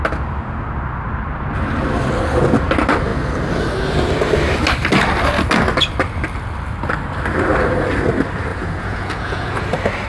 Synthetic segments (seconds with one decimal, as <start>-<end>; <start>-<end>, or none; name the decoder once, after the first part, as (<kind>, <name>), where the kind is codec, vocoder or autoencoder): 8.5-9.7 (vocoder, Vocos)